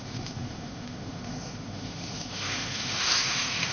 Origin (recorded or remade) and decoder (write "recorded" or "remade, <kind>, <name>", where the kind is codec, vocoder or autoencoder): remade, autoencoder, DAC-VAE